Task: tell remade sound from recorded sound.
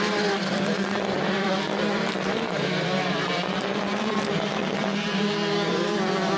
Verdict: remade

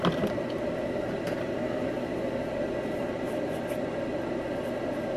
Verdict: recorded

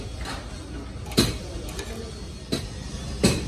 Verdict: recorded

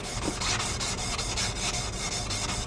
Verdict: recorded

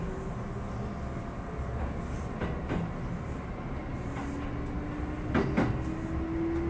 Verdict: recorded